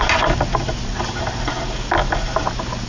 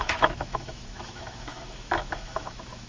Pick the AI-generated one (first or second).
second